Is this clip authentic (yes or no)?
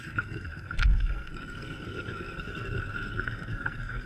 no